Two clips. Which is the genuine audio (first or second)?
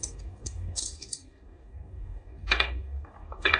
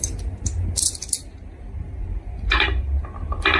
second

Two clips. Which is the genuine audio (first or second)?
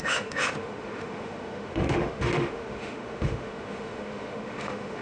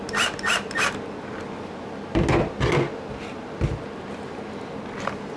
second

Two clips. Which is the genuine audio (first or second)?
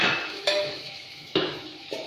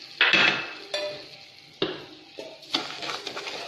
second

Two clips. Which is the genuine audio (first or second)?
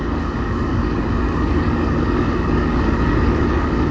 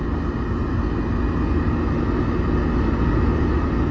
second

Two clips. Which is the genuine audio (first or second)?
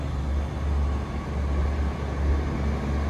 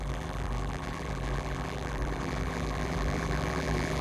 first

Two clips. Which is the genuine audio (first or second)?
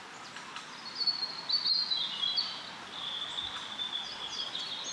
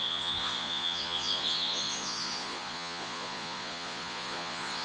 first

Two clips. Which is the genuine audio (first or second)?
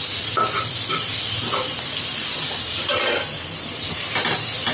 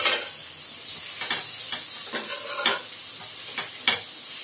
second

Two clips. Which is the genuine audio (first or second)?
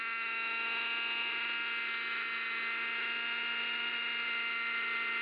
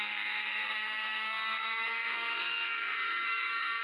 first